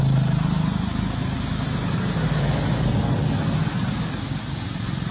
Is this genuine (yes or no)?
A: yes